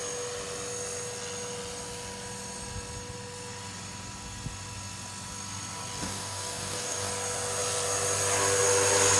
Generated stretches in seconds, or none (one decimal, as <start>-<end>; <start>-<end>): 6.0-7.1